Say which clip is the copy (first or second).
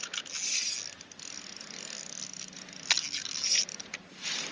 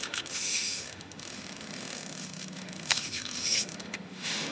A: second